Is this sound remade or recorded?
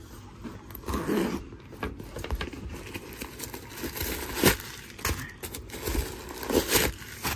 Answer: recorded